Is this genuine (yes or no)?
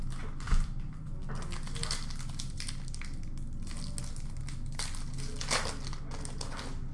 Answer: yes